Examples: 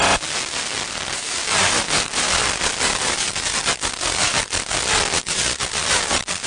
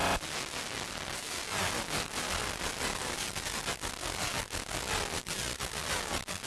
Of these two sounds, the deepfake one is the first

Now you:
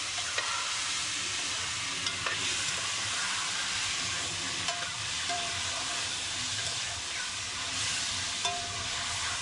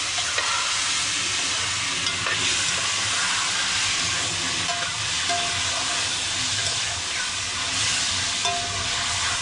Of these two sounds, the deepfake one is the first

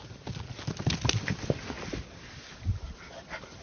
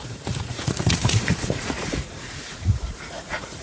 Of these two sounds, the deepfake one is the second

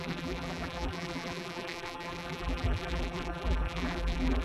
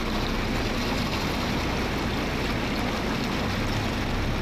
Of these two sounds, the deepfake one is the first